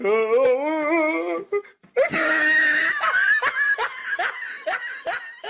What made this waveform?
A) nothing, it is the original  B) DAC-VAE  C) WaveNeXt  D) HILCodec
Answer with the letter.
A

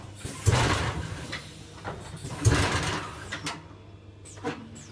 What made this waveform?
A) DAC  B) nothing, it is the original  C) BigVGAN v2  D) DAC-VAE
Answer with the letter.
B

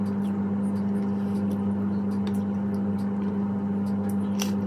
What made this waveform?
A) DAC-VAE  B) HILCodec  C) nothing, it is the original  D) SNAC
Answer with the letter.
C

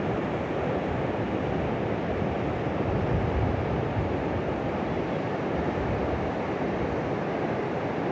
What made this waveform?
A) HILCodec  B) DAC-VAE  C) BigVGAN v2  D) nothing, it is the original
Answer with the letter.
D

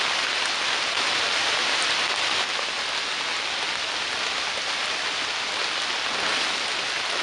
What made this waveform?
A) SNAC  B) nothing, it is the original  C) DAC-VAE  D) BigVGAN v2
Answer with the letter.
B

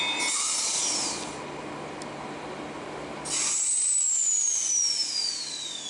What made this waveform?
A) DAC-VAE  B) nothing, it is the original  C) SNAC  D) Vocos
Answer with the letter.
B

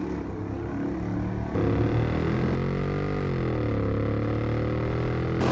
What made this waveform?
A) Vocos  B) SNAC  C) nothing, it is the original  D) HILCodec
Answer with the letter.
C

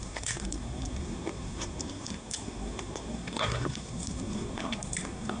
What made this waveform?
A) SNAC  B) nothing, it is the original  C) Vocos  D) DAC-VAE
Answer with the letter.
A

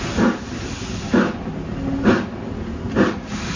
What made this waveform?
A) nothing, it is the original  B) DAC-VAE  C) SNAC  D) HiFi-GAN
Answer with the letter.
A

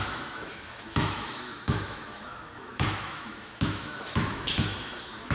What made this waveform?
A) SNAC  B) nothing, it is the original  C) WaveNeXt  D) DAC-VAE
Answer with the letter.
D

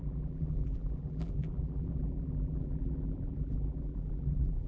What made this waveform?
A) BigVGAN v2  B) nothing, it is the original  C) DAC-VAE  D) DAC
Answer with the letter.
A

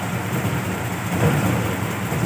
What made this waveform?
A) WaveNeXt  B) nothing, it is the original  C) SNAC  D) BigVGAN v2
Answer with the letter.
B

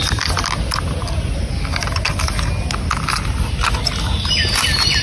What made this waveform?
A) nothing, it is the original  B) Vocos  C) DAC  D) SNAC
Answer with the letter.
A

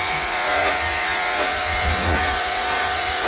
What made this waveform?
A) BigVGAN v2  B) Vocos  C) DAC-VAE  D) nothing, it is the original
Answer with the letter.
B